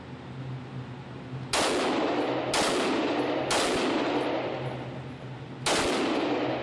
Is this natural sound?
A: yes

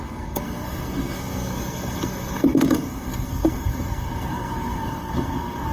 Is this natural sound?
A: no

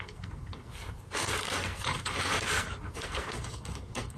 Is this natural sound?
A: no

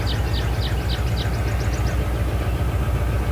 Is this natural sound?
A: yes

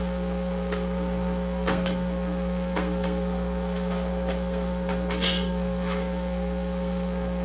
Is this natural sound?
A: no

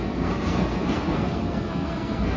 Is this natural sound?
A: no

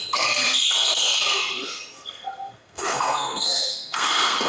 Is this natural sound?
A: no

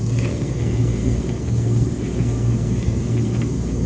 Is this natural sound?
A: no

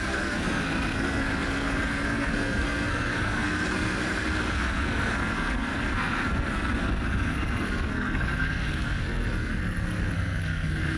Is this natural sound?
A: no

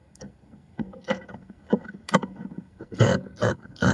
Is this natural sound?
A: no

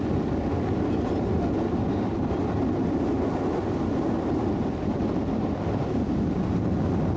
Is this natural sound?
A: yes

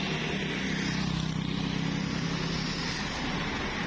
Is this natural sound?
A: yes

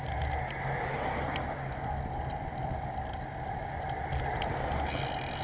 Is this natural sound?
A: yes